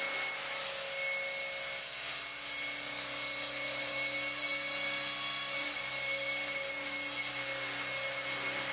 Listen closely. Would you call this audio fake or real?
real